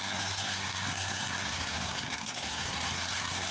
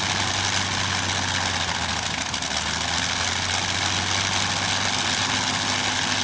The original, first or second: second